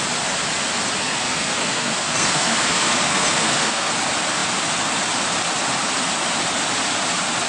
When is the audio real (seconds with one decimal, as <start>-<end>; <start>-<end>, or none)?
0.0-1.0; 3.9-7.5